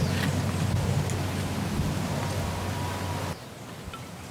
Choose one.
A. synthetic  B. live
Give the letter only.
B